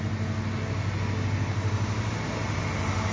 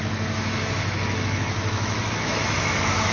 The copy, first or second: second